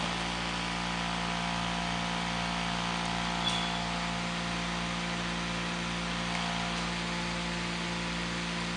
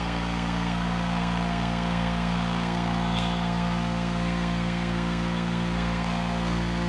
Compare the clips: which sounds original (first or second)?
first